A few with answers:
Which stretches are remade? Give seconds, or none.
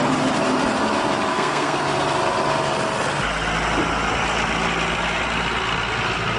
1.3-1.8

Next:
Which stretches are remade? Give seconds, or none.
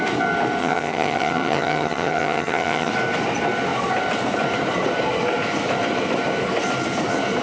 0.6-2.9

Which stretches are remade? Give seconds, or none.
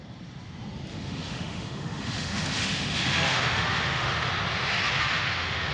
0.9-4.3; 4.8-5.7